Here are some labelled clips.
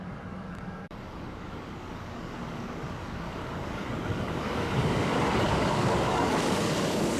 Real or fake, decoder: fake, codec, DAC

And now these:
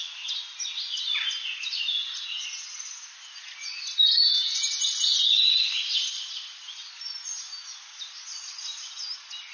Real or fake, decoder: real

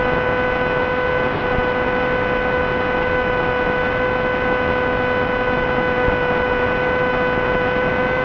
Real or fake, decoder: real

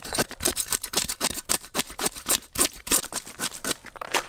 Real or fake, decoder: fake, vocoder, BigVGAN v2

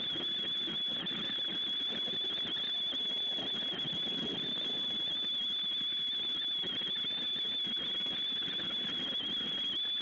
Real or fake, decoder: real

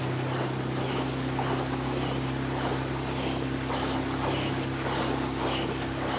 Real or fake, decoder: real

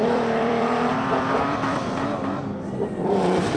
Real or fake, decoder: fake, vocoder, BigVGAN v2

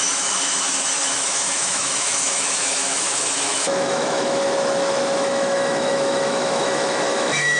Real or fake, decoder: fake, autoencoder, DAC-VAE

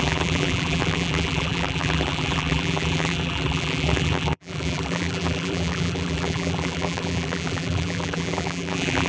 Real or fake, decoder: fake, vocoder, BigVGAN v2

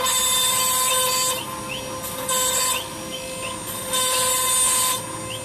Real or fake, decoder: real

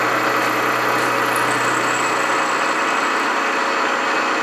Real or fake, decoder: real